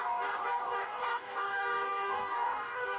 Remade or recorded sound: remade